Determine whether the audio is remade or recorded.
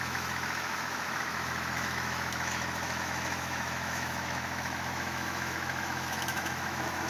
remade